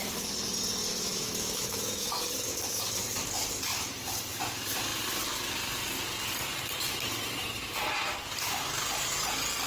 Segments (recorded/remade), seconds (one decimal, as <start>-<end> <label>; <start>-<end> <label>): 0.0-0.9 recorded; 0.9-3.0 remade; 3.0-9.7 recorded

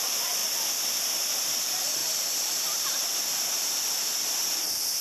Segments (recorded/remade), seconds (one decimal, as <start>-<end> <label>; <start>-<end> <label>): 0.0-5.0 recorded

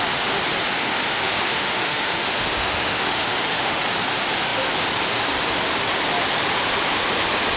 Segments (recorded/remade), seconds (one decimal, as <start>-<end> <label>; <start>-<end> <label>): 0.0-0.8 recorded; 0.8-3.8 remade; 3.8-7.6 recorded

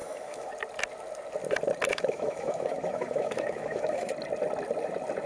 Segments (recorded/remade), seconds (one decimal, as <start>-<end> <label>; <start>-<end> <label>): 0.0-0.5 remade; 0.5-1.9 recorded; 1.9-4.1 remade; 4.1-5.3 recorded

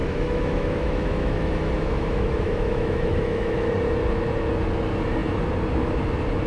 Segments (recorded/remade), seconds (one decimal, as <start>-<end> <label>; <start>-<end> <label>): 0.0-3.7 remade; 3.7-6.5 recorded

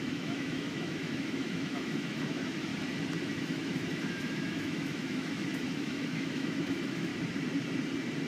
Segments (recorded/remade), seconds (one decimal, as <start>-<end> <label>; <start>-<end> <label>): 0.0-2.7 remade; 2.7-3.2 recorded; 3.2-7.1 remade; 7.1-8.3 recorded